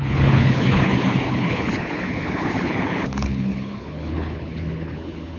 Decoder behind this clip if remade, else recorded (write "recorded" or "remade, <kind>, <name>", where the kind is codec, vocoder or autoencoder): remade, codec, HILCodec